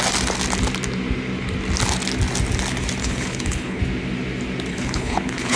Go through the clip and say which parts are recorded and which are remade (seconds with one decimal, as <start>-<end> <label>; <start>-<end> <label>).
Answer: 0.0-3.0 recorded; 3.0-3.8 remade; 3.8-4.7 recorded; 4.7-5.6 remade